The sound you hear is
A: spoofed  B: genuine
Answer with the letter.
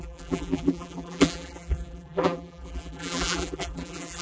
A